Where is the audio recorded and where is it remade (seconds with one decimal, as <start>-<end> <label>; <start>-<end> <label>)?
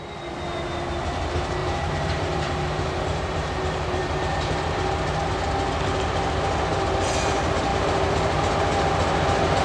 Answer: 0.0-1.6 recorded; 1.6-5.3 remade; 5.3-7.7 recorded; 7.7-9.6 remade